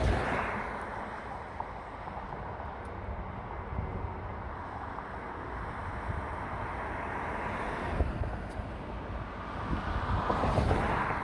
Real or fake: real